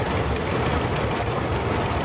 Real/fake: real